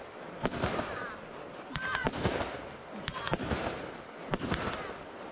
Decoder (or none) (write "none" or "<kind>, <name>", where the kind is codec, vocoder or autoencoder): none